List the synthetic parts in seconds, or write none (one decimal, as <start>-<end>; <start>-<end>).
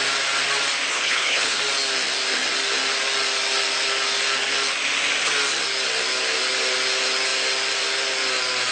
0.9-1.6